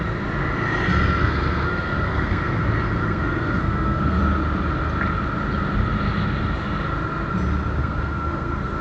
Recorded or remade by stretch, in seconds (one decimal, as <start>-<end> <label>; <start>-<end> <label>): 0.0-1.2 recorded; 1.2-2.6 remade; 2.6-3.0 recorded; 3.0-4.2 remade; 4.2-7.8 recorded; 7.8-8.8 remade